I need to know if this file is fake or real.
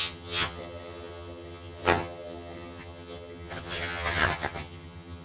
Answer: fake